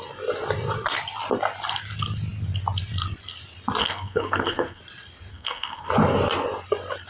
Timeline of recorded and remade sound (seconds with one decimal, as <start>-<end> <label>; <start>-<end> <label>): 0.0-3.8 recorded; 3.8-4.8 remade; 4.8-5.3 recorded; 5.3-5.9 remade; 5.9-7.1 recorded